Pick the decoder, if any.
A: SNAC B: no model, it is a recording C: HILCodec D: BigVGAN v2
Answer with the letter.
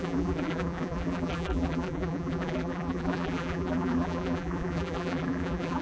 D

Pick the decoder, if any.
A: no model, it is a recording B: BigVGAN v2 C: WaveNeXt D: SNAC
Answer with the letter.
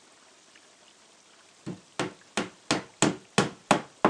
A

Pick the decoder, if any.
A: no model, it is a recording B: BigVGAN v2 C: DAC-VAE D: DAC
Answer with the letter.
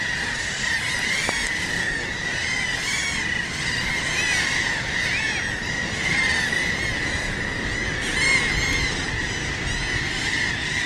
A